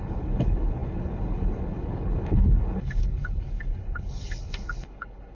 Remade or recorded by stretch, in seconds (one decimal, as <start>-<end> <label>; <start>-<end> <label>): 0.0-5.3 remade